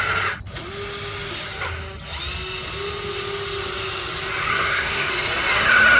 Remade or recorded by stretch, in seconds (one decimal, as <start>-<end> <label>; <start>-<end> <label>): 0.0-4.5 recorded; 4.5-5.1 remade; 5.1-6.0 recorded